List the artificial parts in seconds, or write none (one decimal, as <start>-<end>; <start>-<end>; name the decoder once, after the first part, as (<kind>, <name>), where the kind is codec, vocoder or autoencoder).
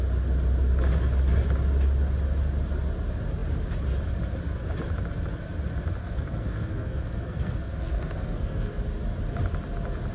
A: 6.0-8.8 (codec, SNAC)